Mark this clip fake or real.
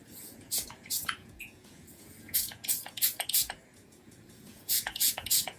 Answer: fake